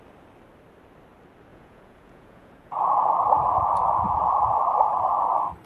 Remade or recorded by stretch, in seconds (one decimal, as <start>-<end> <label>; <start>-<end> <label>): 0.0-1.5 recorded; 1.5-3.1 remade; 3.1-5.7 recorded